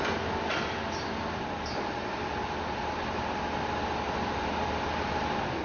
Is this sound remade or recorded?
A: recorded